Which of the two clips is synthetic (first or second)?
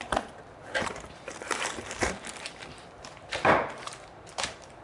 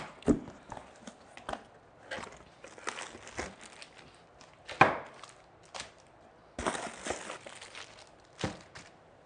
first